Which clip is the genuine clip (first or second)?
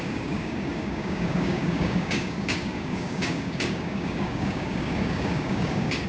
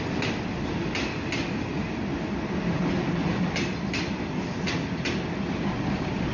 second